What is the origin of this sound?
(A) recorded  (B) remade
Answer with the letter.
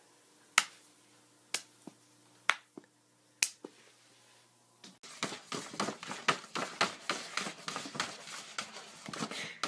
A